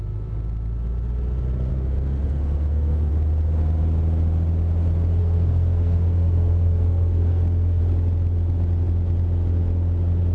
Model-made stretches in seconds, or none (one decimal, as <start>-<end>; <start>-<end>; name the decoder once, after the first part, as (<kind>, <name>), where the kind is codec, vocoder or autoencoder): 1.7-3.1 (codec, SNAC); 5.2-7.8